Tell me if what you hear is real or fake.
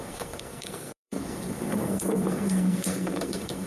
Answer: fake